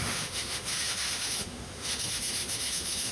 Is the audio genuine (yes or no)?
no